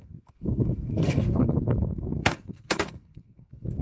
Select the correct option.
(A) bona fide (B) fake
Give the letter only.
B